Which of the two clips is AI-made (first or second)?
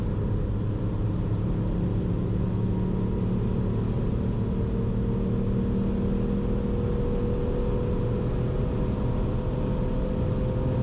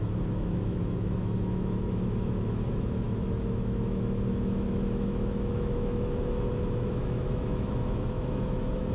second